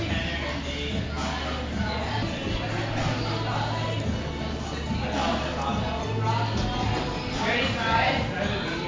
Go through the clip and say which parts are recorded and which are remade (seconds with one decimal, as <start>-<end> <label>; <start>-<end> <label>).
0.0-8.9 recorded